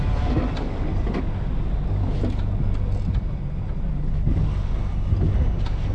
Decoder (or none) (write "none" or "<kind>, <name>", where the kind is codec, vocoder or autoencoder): none